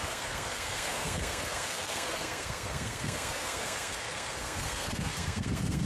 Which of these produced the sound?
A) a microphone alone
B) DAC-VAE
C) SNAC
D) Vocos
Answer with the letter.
C